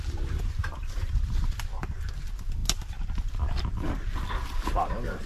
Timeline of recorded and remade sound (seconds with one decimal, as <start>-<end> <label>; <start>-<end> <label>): 0.0-0.6 recorded; 0.6-1.2 remade; 1.2-5.3 recorded